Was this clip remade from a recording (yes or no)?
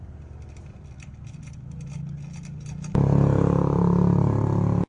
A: no